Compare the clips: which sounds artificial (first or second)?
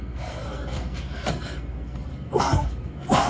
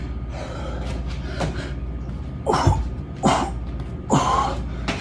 first